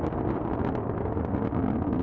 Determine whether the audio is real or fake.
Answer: real